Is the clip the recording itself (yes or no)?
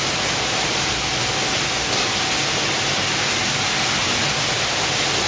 yes